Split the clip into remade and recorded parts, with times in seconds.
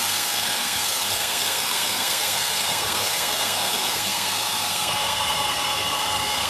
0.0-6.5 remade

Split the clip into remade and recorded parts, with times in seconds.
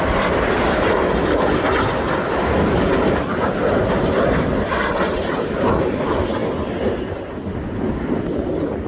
0.0-8.9 recorded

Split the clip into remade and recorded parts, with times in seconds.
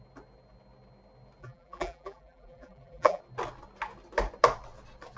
0.0-1.4 recorded; 1.4-3.2 remade; 3.2-5.2 recorded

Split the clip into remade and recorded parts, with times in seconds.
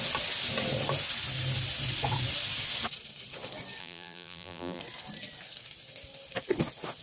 0.0-3.8 recorded; 3.8-4.8 remade; 4.8-7.0 recorded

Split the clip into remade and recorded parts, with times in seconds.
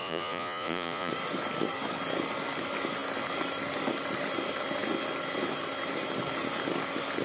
0.0-1.1 remade; 1.1-7.2 recorded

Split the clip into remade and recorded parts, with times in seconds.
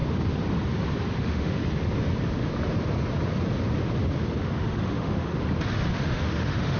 0.0-1.2 recorded; 1.2-1.6 remade; 1.6-4.4 recorded; 4.4-5.3 remade; 5.3-5.9 recorded; 5.9-6.8 remade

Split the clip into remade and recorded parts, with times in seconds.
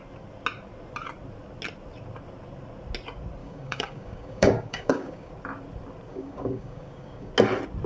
0.0-3.4 recorded; 3.4-5.3 remade; 5.3-6.1 recorded; 6.1-7.3 remade; 7.3-7.9 recorded